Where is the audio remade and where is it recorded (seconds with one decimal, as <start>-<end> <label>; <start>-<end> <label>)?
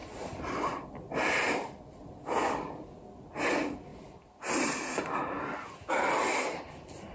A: 0.0-7.1 recorded